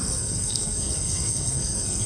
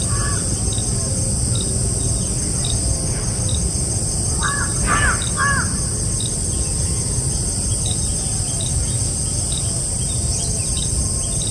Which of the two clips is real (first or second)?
second